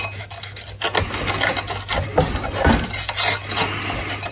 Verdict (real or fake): real